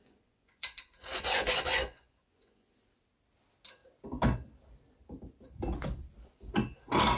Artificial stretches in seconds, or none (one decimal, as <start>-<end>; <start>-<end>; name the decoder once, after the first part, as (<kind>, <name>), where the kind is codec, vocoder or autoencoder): 0.0-2.7 (vocoder, Vocos)

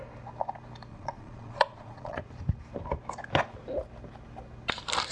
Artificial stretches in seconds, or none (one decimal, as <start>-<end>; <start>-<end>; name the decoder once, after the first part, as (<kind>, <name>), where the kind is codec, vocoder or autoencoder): 0.9-2.2 (vocoder, Vocos)

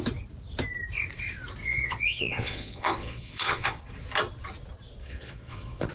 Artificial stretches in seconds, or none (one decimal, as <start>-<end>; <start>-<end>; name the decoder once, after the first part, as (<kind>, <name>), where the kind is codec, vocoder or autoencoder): 1.6-3.8 (vocoder, Vocos); 5.0-5.9

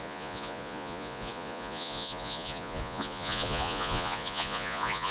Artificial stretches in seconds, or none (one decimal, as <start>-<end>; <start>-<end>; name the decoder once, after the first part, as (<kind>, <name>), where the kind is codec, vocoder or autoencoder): 0.0-5.1 (vocoder, Vocos)